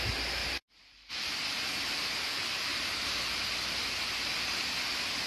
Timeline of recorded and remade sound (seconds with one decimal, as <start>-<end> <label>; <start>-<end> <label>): 0.0-0.4 recorded; 0.4-1.3 remade; 1.3-2.7 recorded; 2.7-3.5 remade; 3.5-5.3 recorded